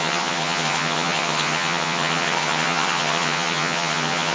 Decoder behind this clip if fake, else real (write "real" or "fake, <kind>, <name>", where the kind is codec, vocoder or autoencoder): fake, vocoder, HiFi-GAN